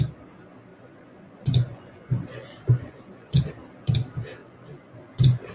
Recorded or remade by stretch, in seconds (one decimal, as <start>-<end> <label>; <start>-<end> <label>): 0.0-0.7 recorded; 0.7-3.5 remade; 3.5-4.4 recorded; 4.4-5.5 remade